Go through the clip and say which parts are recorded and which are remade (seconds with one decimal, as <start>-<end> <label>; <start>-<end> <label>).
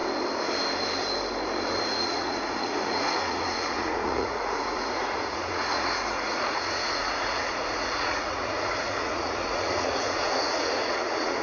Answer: 0.0-1.8 recorded; 1.8-11.4 remade